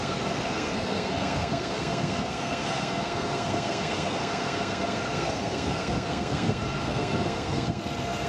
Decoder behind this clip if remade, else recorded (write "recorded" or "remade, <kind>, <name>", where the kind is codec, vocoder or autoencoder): remade, codec, SNAC